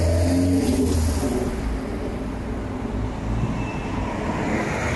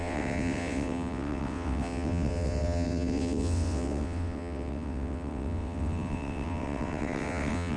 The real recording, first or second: first